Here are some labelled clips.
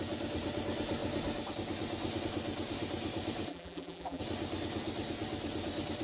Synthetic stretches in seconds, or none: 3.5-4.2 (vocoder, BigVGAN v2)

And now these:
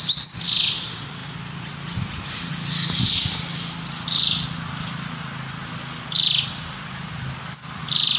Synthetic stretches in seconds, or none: none

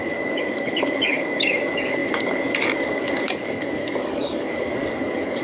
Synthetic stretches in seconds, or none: 0.0-5.4 (codec, DAC)

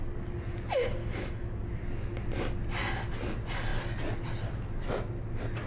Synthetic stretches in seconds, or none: 1.0-1.5 (autoencoder, DAC-VAE)

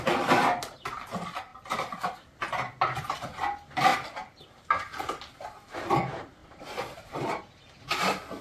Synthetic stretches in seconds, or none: 6.4-7.4 (vocoder, BigVGAN v2)

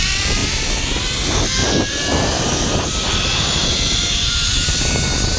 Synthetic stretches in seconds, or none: 1.6-4.8 (vocoder, BigVGAN v2)